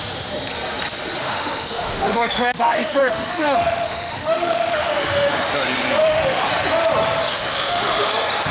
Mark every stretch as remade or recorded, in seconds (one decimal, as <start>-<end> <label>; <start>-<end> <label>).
0.0-1.2 recorded; 1.2-5.4 remade; 5.4-6.0 recorded; 6.0-6.5 remade; 6.5-7.3 recorded; 7.3-8.1 remade; 8.1-8.5 recorded